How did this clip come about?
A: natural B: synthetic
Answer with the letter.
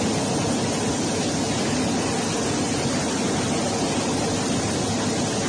A